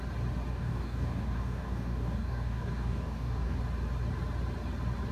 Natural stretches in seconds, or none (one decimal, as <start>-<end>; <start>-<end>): 0.0-0.5; 3.6-5.1